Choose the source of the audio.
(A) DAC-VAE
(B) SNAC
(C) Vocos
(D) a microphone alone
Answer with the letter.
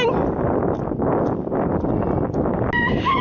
D